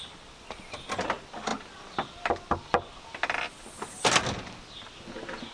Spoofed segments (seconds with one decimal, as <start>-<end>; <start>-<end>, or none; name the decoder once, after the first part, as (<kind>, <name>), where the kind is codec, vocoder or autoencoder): none

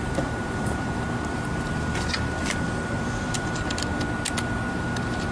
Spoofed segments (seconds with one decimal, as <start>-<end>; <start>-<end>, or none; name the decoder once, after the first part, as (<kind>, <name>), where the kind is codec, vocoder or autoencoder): 0.0-3.9 (vocoder, BigVGAN v2); 4.7-5.3

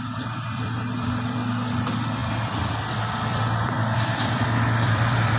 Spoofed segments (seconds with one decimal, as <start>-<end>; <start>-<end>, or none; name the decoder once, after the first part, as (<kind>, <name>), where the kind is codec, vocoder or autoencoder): 0.0-5.4 (vocoder, BigVGAN v2)

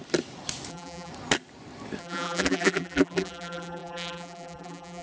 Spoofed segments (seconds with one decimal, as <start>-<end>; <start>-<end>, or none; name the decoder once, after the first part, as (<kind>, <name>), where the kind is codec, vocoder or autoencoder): 0.7-1.1 (vocoder, BigVGAN v2); 2.0-5.0

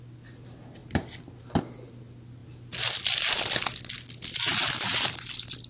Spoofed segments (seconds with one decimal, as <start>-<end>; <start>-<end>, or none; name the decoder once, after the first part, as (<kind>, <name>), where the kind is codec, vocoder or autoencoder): 0.8-1.6 (vocoder, BigVGAN v2); 2.4-2.9

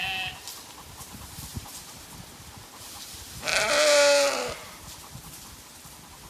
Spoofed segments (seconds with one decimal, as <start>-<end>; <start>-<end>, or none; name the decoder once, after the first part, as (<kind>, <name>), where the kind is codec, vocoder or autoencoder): 1.5-2.3 (vocoder, BigVGAN v2)